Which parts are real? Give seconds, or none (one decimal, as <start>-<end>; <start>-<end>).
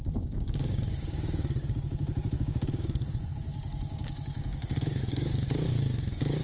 none